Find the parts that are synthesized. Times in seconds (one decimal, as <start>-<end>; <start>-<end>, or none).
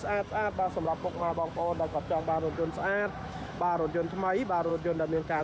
1.2-2.2; 2.8-3.6; 4.7-5.4